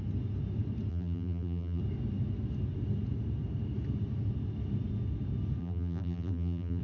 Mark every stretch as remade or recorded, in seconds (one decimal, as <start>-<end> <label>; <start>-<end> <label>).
0.0-0.9 recorded; 0.9-1.8 remade; 1.8-5.6 recorded; 5.6-6.8 remade